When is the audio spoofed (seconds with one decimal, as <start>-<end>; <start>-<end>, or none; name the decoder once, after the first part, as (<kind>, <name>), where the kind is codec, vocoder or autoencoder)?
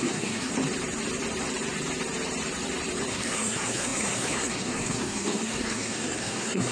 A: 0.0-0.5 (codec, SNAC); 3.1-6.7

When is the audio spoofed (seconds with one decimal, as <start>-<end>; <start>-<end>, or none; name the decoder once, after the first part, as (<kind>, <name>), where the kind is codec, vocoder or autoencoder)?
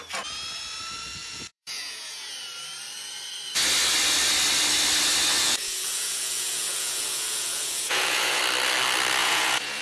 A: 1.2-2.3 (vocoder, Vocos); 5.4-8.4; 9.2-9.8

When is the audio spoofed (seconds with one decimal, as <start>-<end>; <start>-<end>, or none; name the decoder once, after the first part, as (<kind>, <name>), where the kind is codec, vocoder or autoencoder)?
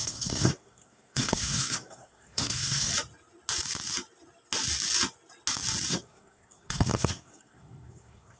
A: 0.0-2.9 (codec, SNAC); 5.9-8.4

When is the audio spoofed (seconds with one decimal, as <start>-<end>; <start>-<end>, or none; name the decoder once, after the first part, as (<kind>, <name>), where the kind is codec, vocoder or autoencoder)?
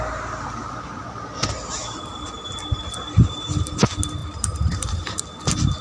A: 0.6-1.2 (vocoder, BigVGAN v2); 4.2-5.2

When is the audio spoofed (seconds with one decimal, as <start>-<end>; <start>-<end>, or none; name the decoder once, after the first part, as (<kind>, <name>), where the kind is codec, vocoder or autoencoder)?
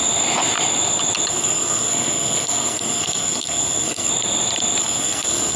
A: 1.3-4.1 (codec, SNAC); 4.8-5.6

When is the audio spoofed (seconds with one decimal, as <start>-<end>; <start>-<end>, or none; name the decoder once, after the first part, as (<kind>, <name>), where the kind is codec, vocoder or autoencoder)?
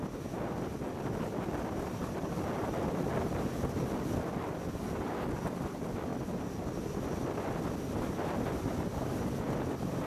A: none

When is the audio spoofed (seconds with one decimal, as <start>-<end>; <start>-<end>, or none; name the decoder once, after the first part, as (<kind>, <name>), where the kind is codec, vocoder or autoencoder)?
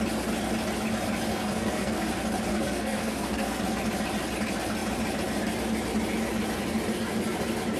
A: 1.3-2.1 (codec, SNAC); 2.5-3.6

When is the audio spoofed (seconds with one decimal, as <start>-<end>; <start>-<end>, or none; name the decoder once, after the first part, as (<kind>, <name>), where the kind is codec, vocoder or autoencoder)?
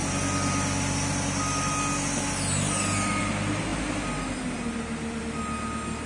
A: none